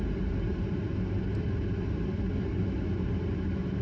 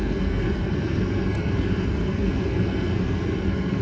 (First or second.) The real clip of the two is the first